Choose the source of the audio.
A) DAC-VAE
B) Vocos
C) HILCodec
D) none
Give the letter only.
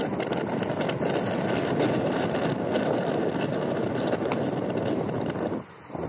D